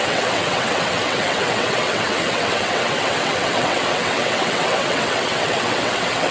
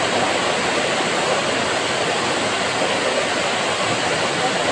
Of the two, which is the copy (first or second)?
first